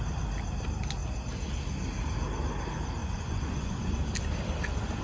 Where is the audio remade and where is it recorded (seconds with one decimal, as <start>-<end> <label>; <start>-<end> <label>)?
0.0-3.0 recorded; 3.0-3.9 remade; 3.9-5.0 recorded